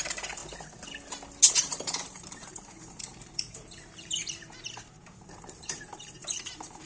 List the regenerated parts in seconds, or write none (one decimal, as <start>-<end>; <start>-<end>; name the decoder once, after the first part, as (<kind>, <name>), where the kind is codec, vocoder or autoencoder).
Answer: 0.0-0.4 (vocoder, BigVGAN v2); 1.5-6.9